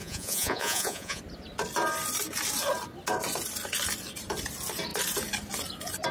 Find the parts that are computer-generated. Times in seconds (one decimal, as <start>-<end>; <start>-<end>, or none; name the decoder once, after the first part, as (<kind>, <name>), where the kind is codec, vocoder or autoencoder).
0.0-1.2 (vocoder, Vocos)